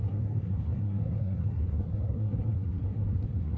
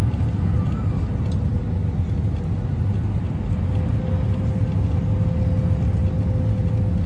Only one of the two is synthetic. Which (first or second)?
first